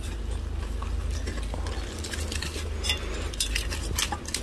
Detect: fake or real real